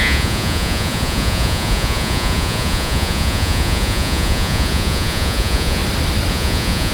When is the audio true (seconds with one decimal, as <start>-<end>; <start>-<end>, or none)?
5.8-6.3